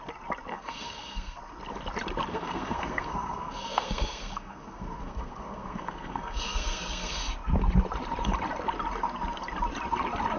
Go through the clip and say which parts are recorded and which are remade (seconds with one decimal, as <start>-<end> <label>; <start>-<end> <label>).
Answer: 0.0-0.5 recorded; 0.5-1.4 remade; 1.4-2.3 recorded; 2.3-7.2 remade; 7.2-10.4 recorded

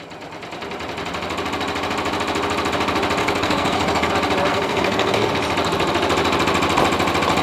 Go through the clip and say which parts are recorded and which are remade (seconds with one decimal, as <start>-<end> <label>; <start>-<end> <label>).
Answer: 0.0-3.2 recorded; 3.2-4.1 remade; 4.1-4.5 recorded; 4.5-5.3 remade; 5.3-7.4 recorded

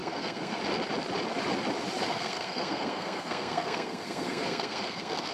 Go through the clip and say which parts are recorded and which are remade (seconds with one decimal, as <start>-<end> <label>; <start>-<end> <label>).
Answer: 0.0-0.6 remade; 0.6-2.1 recorded; 2.1-5.3 remade